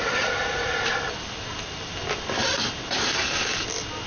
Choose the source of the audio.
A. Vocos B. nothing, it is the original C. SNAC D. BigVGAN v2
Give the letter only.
B